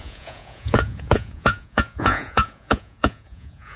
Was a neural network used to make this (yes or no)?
yes